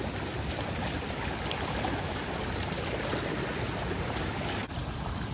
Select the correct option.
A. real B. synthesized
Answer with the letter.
A